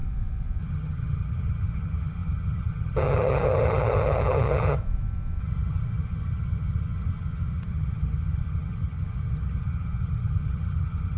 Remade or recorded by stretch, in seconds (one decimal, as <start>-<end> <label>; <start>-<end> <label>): 0.0-0.6 recorded; 0.6-4.8 remade; 4.8-5.4 recorded; 5.4-11.2 remade